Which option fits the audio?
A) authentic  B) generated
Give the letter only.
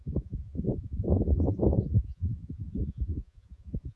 B